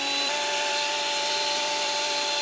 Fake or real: fake